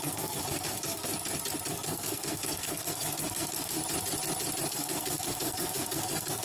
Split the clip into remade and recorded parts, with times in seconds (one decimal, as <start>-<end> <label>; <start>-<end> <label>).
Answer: 0.0-1.1 remade; 1.1-1.7 recorded; 1.7-3.8 remade; 3.8-4.7 recorded; 4.7-6.4 remade